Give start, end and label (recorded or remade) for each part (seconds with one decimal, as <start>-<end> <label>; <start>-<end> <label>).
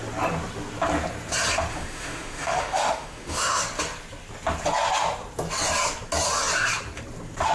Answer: 0.0-1.7 recorded; 1.7-3.6 remade; 3.6-7.5 recorded